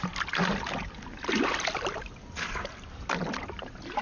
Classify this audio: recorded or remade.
recorded